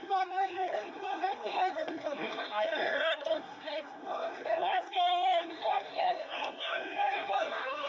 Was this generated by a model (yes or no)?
yes